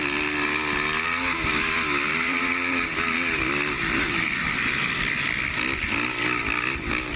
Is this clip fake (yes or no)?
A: no